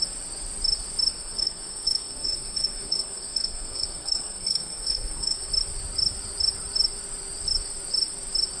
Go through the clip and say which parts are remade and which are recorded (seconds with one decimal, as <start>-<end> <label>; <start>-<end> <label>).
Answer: 0.0-1.1 recorded; 1.1-5.5 remade; 5.5-8.6 recorded